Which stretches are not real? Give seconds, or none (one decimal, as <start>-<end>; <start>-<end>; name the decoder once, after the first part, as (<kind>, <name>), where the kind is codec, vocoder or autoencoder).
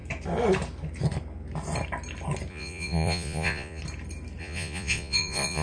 2.5-3.8 (vocoder, Vocos); 4.4-5.6